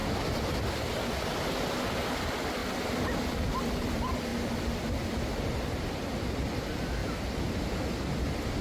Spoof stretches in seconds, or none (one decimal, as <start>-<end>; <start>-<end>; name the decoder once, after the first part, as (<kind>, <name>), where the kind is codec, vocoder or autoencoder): 1.7-2.6 (vocoder, BigVGAN v2); 3.6-4.3; 5.3-7.0; 7.6-8.6